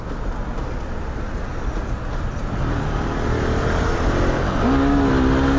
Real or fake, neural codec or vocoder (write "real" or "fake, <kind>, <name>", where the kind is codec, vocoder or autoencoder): real